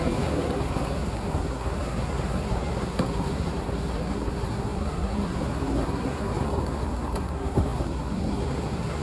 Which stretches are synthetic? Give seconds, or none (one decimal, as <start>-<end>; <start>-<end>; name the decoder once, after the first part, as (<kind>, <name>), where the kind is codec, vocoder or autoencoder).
0.0-9.0 (codec, SNAC)